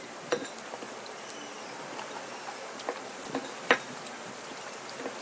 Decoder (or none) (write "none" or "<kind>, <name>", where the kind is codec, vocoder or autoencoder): none